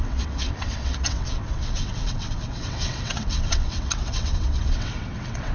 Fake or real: fake